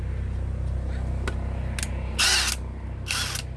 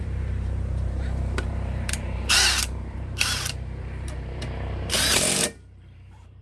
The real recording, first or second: first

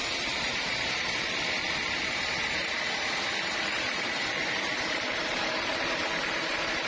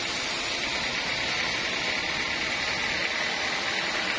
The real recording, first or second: second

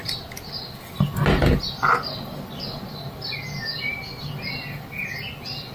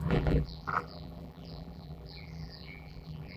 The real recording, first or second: first